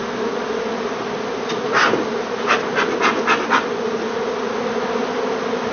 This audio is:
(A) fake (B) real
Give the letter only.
B